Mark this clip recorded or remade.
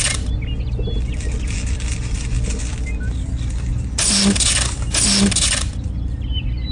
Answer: recorded